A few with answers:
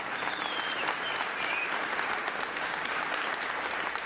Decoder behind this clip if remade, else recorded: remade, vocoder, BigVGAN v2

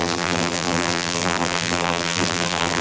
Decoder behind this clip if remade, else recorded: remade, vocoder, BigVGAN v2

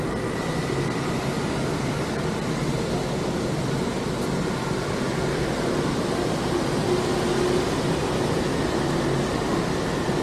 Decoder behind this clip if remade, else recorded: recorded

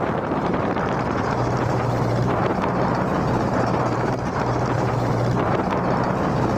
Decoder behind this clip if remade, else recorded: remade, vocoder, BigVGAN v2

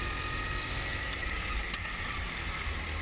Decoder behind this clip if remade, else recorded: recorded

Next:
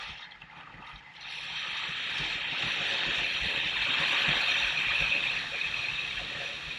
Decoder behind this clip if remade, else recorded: remade, vocoder, BigVGAN v2